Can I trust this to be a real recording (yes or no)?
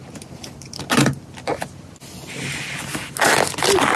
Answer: yes